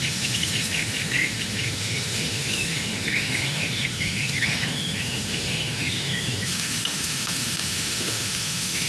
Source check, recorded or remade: remade